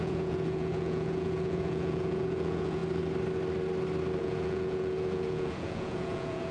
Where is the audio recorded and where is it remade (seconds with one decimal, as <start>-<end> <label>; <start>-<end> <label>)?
0.0-2.8 remade; 2.8-4.2 recorded; 4.2-6.5 remade